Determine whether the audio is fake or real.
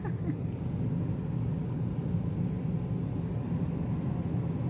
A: real